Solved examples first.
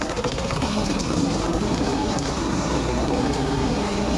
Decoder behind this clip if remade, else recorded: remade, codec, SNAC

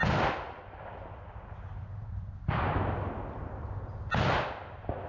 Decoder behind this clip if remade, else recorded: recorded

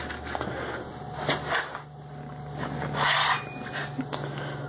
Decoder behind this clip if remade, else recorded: recorded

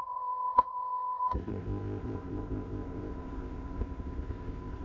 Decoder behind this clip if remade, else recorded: remade, codec, ZipCodec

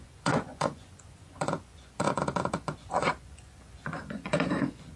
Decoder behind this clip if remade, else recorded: remade, vocoder, Vocos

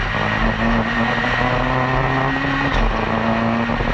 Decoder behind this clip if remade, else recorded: recorded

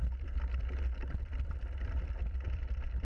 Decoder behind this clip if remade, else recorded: remade, vocoder, BigVGAN v2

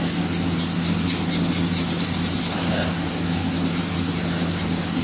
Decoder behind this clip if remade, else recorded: recorded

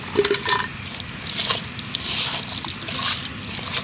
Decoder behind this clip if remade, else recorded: recorded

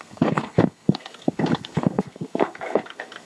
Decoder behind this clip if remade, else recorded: remade, codec, SNAC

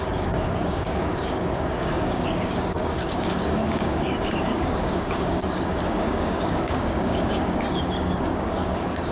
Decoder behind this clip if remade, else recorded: remade, codec, DAC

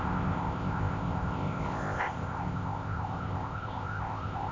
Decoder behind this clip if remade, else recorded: remade, codec, ZipCodec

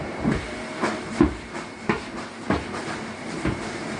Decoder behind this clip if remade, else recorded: remade, vocoder, BigVGAN v2